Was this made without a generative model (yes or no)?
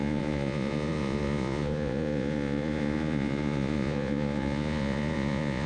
no